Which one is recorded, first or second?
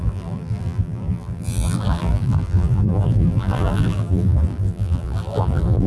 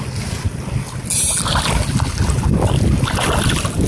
second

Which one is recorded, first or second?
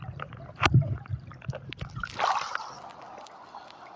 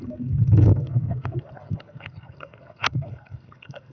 first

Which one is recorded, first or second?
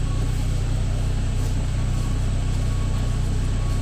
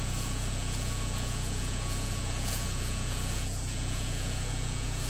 first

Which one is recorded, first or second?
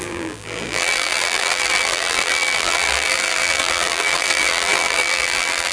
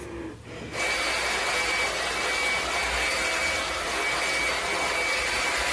second